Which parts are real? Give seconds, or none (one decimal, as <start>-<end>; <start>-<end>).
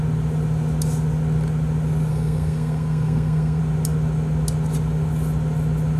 0.0-2.1; 3.6-6.0